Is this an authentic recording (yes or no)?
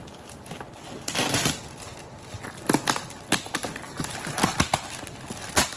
yes